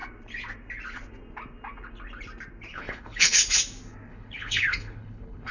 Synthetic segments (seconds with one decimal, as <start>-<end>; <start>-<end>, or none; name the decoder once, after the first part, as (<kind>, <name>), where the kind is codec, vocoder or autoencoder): 2.7-3.6 (codec, HILCodec); 4.1-5.5